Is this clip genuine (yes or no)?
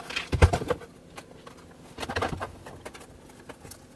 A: yes